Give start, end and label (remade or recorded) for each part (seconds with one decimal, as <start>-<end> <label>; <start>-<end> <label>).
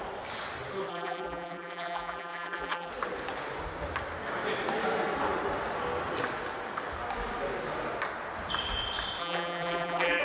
0.0-0.9 recorded; 0.9-2.9 remade; 2.9-9.2 recorded; 9.2-10.2 remade